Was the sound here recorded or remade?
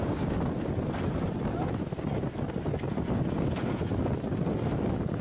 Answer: recorded